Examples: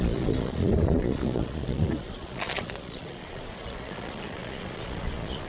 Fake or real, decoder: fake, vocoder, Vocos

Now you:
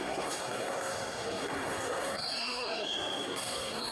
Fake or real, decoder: fake, codec, SNAC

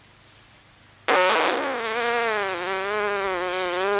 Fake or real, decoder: real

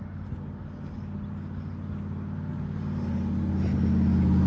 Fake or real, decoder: real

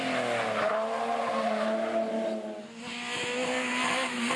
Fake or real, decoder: real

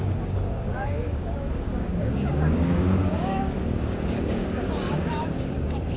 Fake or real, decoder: fake, codec, DAC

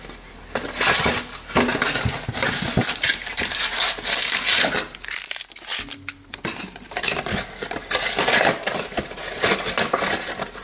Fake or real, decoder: real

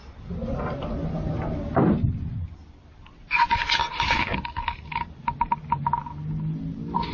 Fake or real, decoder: real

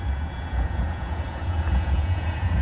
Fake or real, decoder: fake, vocoder, Vocos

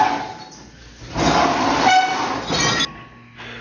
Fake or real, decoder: real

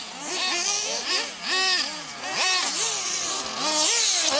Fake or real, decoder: real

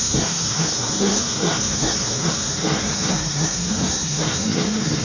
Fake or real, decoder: fake, codec, SNAC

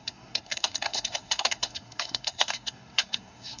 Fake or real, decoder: fake, codec, SNAC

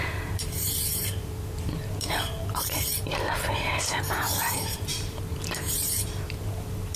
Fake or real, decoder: fake, vocoder, BigVGAN v2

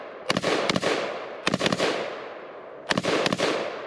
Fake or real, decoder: real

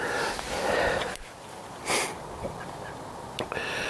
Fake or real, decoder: real